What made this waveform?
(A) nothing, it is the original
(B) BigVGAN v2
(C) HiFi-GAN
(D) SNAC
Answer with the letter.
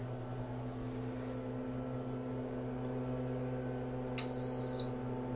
A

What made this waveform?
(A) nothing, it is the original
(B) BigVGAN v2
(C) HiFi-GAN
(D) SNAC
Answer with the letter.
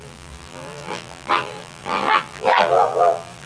B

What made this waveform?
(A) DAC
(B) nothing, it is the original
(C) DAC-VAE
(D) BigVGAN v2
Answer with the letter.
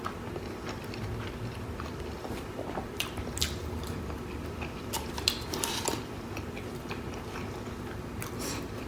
D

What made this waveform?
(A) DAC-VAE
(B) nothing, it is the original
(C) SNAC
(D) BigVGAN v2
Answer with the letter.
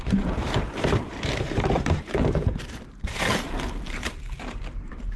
D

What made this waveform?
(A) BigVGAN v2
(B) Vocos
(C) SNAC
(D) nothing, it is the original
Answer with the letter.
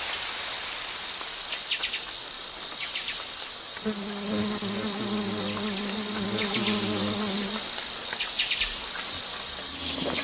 D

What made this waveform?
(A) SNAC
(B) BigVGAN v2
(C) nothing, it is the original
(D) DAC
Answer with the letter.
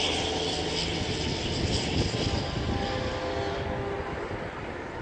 B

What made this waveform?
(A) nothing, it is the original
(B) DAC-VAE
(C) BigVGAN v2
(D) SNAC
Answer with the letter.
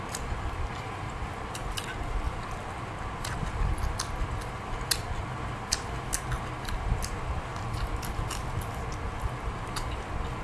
A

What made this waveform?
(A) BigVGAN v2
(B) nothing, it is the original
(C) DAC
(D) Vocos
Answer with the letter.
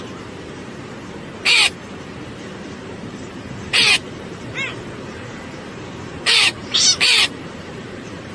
A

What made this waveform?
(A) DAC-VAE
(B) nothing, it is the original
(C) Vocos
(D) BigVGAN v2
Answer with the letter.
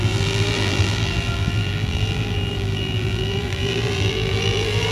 D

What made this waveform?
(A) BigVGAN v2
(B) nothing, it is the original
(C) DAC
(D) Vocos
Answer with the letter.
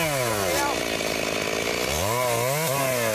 B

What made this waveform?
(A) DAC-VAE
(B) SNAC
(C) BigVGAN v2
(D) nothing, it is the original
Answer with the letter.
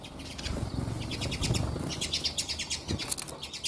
D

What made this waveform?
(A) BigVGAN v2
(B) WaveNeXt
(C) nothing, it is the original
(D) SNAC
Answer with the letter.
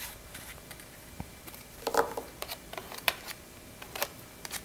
A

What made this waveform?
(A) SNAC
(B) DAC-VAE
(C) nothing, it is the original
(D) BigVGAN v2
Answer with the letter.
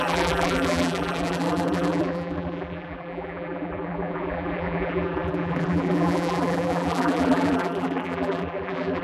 D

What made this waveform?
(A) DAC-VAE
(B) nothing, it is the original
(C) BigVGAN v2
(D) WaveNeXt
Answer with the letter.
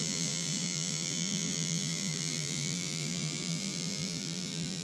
C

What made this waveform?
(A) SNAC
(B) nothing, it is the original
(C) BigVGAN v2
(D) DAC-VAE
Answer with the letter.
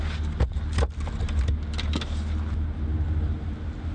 B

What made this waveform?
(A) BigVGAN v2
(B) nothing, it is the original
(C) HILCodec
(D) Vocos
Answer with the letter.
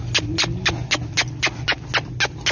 B